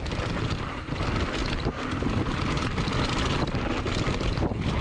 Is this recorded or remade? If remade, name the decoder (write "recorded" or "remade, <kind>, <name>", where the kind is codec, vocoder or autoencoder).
recorded